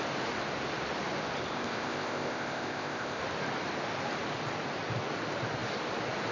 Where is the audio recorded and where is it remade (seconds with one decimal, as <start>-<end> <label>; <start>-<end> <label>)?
0.0-1.5 recorded; 1.5-3.2 remade; 3.2-6.3 recorded